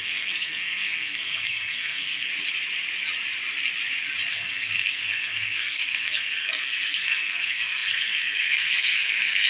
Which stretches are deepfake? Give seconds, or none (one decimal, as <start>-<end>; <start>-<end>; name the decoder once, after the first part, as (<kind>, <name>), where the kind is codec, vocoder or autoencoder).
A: 0.0-2.3 (codec, SNAC); 4.3-9.5